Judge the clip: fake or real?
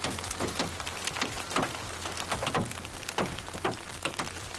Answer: real